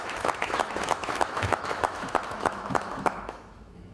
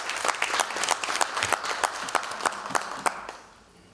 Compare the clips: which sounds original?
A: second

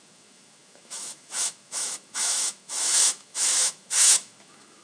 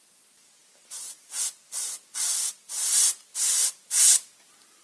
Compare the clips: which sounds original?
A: second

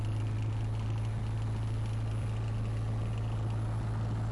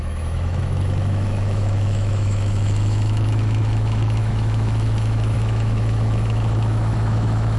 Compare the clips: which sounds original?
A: first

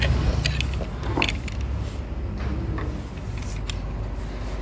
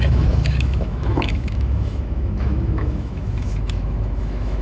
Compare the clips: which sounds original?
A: first